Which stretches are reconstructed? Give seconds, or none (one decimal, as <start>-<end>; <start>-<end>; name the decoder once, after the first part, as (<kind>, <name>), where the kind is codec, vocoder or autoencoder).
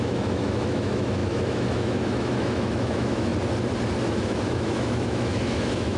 0.0-3.3 (autoencoder, DAC-VAE); 4.1-6.0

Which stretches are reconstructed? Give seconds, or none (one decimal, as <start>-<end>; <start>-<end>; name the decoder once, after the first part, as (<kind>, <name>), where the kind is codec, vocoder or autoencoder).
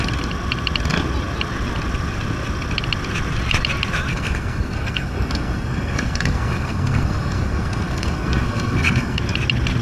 4.1-9.2 (codec, SNAC)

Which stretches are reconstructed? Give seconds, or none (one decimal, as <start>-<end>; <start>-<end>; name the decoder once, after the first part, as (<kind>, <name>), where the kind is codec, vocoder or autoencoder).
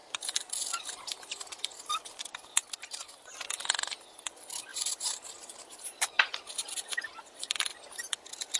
0.0-2.6 (vocoder, BigVGAN v2); 3.4-8.6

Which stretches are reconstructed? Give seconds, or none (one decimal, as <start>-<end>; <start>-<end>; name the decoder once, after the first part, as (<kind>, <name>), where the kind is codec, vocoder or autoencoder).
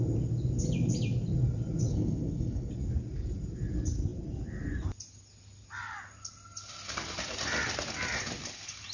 1.9-2.7 (codec, HILCodec)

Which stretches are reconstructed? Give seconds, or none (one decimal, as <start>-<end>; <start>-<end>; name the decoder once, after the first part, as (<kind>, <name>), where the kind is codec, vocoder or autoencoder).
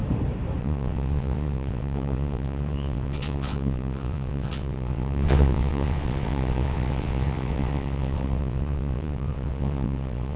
0.6-10.4 (vocoder, WaveNeXt)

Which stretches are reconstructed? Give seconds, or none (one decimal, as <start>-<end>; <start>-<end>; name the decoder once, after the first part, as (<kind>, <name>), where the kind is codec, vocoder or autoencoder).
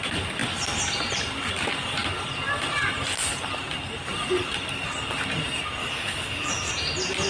5.8-6.7 (autoencoder, DAC-VAE)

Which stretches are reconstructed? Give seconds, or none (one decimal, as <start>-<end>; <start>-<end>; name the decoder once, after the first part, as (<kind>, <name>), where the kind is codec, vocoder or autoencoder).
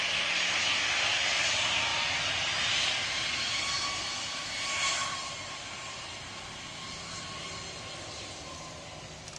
none